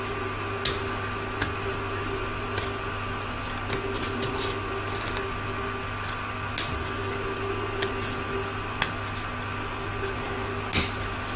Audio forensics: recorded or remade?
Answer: recorded